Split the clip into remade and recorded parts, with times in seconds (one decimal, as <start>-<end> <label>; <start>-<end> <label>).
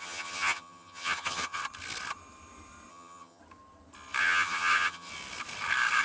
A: 0.0-1.6 remade; 1.6-2.9 recorded; 2.9-3.4 remade; 3.4-4.2 recorded; 4.2-5.1 remade; 5.1-6.0 recorded